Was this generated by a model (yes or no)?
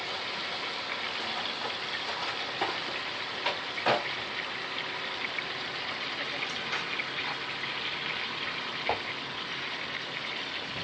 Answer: no